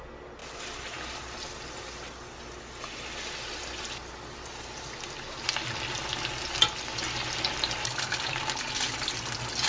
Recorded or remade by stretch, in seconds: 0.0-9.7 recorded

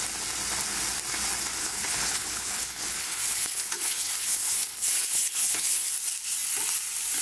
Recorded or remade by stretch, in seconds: 0.0-1.6 recorded; 1.6-5.9 remade; 5.9-7.2 recorded

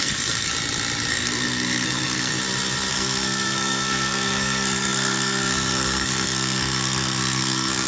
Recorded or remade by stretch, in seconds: 0.0-0.5 remade; 0.5-1.1 recorded; 1.1-2.3 remade; 2.3-2.9 recorded; 2.9-7.9 remade

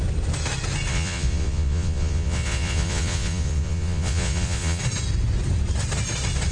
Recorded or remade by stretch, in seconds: 0.0-0.9 recorded; 0.9-4.8 remade; 4.8-6.5 recorded

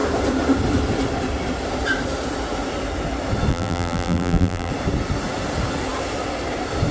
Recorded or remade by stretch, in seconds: 0.0-3.5 recorded; 3.5-4.7 remade; 4.7-6.9 recorded

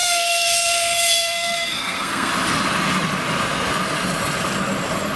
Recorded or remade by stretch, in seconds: 0.0-2.3 remade; 2.3-5.2 recorded